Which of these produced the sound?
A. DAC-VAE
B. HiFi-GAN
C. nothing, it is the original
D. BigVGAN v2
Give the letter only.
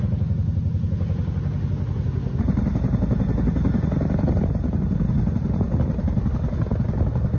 C